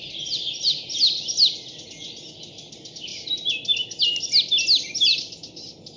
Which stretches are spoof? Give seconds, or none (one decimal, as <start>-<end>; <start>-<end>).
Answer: none